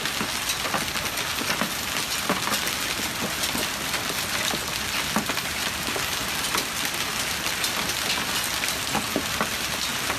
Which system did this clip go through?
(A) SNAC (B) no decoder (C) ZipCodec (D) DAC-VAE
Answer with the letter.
B